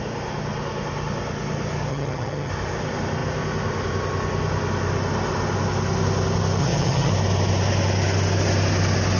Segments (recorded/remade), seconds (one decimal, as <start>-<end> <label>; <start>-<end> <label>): 0.0-1.9 recorded; 1.9-2.5 remade; 2.5-6.6 recorded; 6.6-7.1 remade; 7.1-9.2 recorded